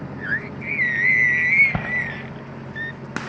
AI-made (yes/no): no